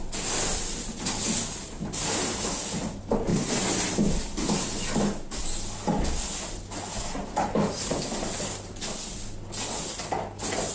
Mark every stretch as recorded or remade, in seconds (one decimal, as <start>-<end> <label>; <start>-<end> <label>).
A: 0.0-10.7 recorded

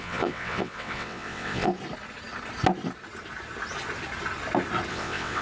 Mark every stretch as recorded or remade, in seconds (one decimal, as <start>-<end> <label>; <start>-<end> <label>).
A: 0.0-1.7 remade; 1.7-4.9 recorded; 4.9-5.4 remade

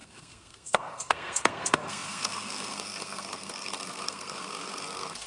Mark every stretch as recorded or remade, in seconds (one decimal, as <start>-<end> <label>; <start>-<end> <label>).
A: 0.0-5.3 remade

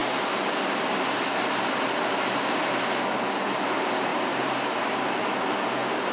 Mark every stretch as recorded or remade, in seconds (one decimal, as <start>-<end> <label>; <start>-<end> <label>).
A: 0.0-6.1 recorded

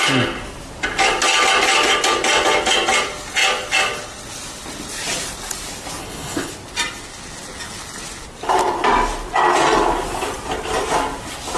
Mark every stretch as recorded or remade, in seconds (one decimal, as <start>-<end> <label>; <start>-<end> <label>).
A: 0.0-6.0 recorded; 6.0-6.5 remade; 6.5-11.6 recorded

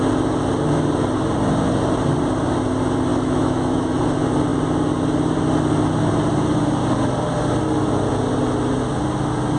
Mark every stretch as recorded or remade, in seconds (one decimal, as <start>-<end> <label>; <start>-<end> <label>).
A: 0.0-3.1 recorded; 3.1-4.0 remade; 4.0-9.6 recorded